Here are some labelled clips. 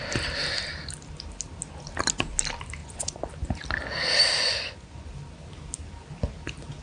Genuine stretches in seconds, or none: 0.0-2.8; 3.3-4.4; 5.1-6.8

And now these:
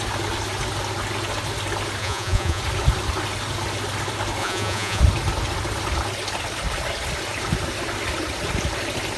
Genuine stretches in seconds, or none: 0.0-2.0; 2.6-4.4; 5.0-9.2

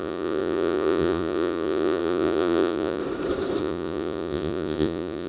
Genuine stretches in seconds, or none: 3.0-3.6

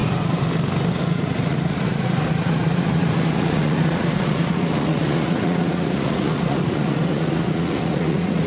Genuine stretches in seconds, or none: 0.0-0.9